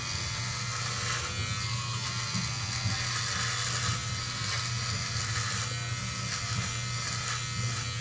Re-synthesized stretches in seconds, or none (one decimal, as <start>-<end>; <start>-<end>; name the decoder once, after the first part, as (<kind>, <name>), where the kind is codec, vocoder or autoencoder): none